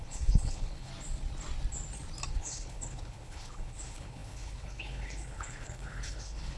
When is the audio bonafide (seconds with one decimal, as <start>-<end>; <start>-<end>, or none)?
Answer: 0.9-2.3